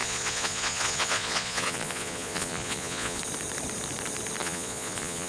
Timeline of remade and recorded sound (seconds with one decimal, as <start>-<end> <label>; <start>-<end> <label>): 0.0-3.2 remade; 3.2-4.4 recorded; 4.4-5.3 remade